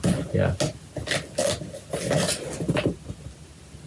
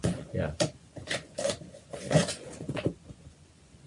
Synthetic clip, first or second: second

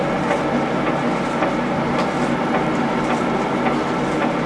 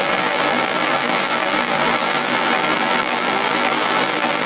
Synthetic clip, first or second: second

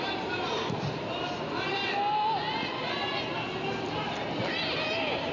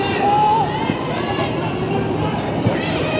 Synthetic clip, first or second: second